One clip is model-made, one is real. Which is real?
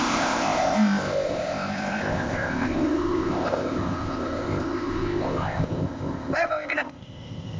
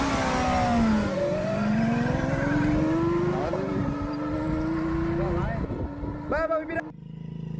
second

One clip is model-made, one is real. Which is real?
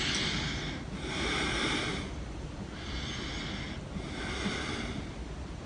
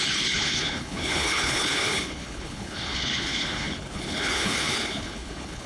first